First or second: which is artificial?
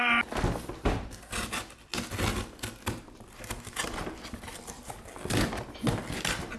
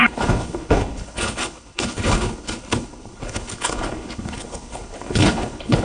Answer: second